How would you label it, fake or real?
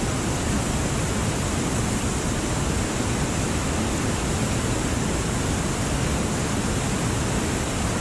real